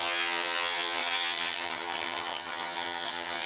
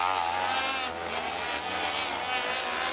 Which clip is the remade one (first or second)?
first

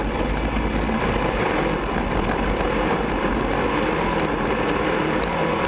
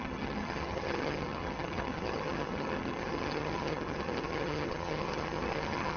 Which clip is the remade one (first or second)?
second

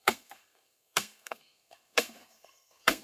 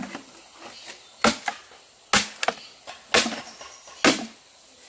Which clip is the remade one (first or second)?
first